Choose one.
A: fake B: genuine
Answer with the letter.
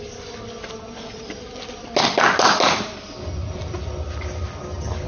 B